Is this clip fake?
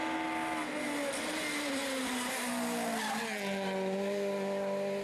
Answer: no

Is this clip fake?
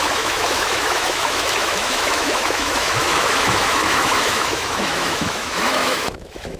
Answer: yes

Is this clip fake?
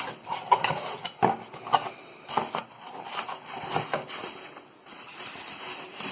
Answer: no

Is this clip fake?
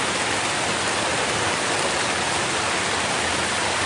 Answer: no